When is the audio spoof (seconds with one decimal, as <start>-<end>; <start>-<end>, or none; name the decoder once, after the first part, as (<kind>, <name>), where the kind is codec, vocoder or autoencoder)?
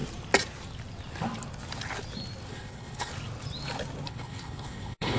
2.5-3.1 (codec, HILCodec); 4.1-5.2